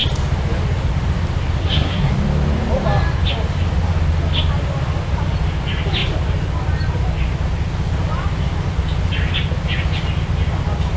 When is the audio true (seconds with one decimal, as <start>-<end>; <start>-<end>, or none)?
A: 0.0-1.6; 2.1-11.0